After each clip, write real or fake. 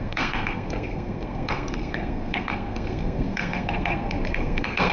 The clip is fake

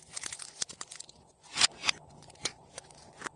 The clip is fake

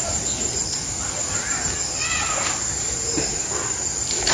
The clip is real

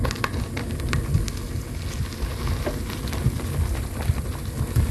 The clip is real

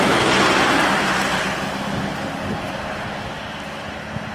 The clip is real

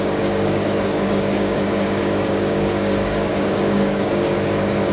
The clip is fake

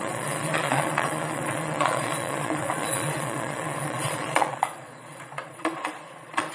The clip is fake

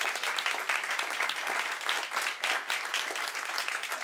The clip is real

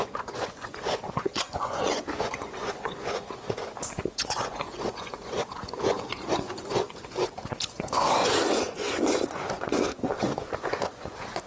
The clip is fake